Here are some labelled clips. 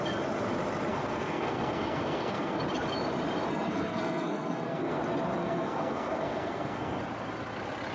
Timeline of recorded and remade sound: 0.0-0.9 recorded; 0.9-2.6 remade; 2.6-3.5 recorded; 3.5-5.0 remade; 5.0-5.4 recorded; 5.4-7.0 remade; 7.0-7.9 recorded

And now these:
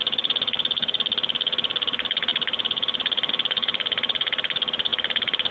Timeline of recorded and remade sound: 0.0-5.5 recorded

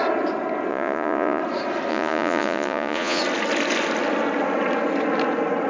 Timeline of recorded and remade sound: 0.0-0.7 recorded; 0.7-1.4 remade; 1.4-1.9 recorded; 1.9-3.2 remade; 3.2-5.7 recorded

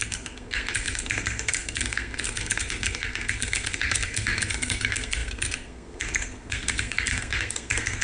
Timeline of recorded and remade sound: 0.0-8.0 remade

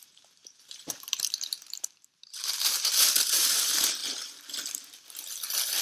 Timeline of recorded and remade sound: 0.0-4.0 remade; 4.0-5.8 recorded

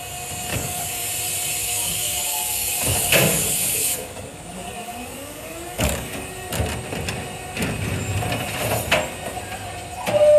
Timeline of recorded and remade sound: 0.0-0.5 recorded; 0.5-1.1 remade; 1.1-1.6 recorded; 1.6-6.5 remade; 6.5-10.4 recorded